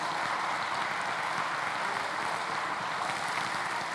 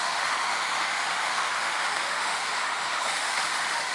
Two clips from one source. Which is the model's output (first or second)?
second